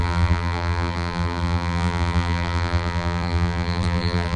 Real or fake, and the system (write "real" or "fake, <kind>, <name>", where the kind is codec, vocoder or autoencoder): fake, vocoder, BigVGAN v2